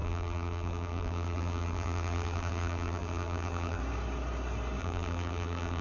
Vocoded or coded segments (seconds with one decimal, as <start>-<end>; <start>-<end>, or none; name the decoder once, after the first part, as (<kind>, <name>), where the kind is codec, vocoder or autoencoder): 0.0-3.8 (vocoder, BigVGAN v2); 4.8-5.8